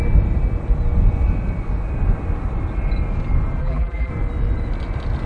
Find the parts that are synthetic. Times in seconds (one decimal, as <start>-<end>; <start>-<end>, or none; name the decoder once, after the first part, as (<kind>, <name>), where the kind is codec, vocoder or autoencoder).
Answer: 3.6-4.1 (vocoder, BigVGAN v2)